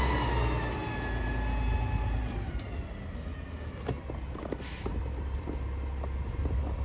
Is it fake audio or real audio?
real